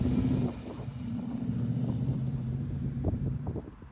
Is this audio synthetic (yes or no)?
yes